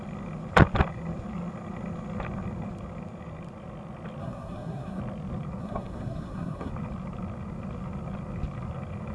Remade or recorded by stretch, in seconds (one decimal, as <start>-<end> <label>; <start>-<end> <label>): 0.0-4.2 recorded; 4.2-5.0 remade; 5.0-5.6 recorded; 5.6-6.7 remade; 6.7-9.1 recorded